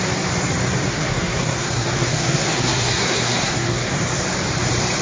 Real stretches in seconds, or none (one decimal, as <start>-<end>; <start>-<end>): 0.0-0.9; 3.9-5.0